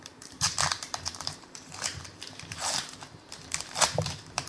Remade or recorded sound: remade